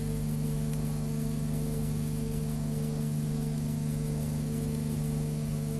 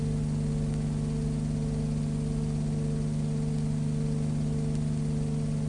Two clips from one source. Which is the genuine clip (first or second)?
second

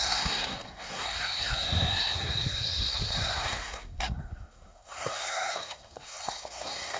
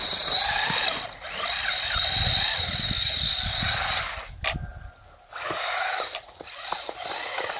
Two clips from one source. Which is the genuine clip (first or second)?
second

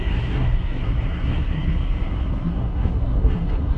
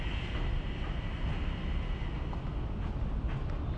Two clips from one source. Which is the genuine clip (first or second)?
second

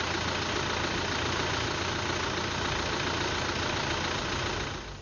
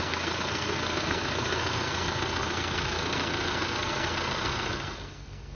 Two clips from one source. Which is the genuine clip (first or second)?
first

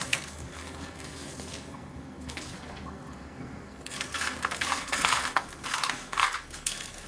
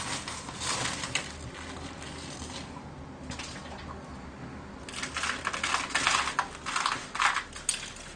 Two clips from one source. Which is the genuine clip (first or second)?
second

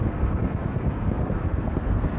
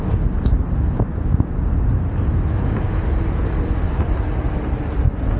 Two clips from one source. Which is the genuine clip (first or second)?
second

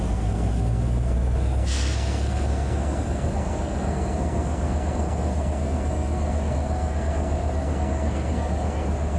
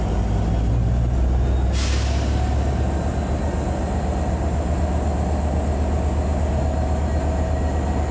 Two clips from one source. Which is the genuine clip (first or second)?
second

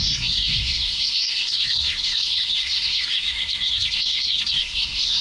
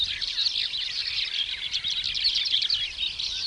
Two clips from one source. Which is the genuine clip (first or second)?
second